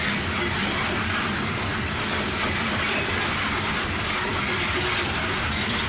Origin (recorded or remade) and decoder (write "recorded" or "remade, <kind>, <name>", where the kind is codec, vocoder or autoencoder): recorded